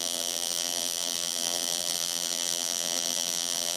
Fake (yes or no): yes